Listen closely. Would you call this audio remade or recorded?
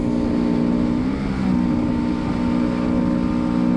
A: recorded